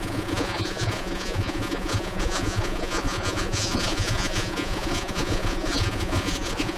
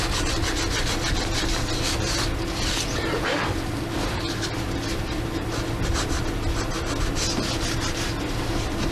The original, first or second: second